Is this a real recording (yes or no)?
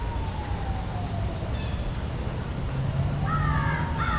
yes